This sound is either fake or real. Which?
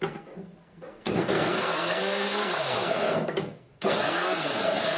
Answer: fake